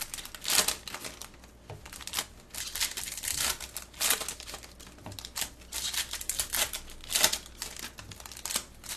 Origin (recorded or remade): recorded